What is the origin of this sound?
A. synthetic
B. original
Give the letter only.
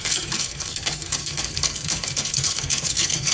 A